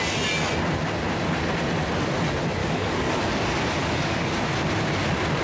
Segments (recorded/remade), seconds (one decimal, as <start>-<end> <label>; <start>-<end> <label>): 0.0-2.6 recorded; 2.6-3.1 remade; 3.1-3.8 recorded; 3.8-4.3 remade; 4.3-5.4 recorded